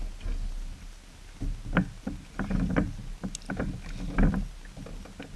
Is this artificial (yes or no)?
no